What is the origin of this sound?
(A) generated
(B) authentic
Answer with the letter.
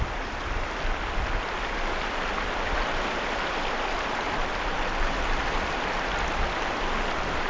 B